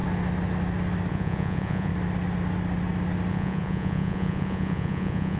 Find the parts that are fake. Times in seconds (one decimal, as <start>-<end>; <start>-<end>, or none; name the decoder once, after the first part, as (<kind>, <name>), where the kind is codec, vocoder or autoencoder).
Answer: 1.1-1.9 (vocoder, Vocos); 3.3-5.4